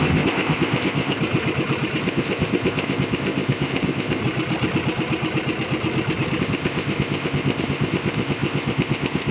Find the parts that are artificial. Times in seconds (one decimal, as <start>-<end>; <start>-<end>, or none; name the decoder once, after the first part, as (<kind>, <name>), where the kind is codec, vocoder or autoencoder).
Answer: 0.0-1.2 (codec, ZipCodec); 2.0-4.2; 6.4-9.3